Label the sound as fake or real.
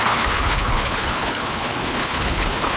fake